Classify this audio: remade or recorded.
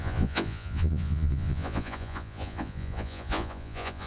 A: remade